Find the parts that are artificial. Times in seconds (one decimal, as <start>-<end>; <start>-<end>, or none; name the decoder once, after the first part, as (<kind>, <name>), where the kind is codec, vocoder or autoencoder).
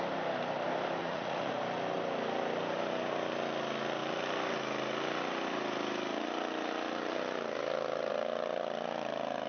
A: 1.0-1.5 (vocoder, Vocos)